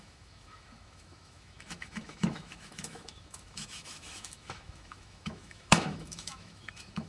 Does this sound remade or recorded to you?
remade